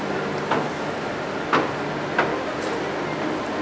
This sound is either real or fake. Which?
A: real